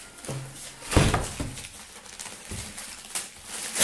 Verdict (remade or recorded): recorded